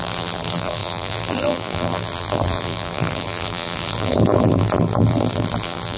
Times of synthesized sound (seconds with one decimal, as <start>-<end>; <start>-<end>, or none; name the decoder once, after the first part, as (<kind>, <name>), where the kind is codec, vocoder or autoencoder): 0.0-6.0 (vocoder, BigVGAN v2)